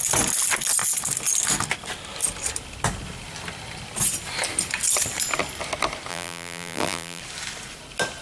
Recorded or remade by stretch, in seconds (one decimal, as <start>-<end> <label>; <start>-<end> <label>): 0.0-6.1 recorded; 6.1-7.2 remade; 7.2-8.2 recorded